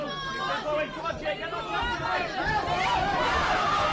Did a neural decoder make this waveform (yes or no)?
no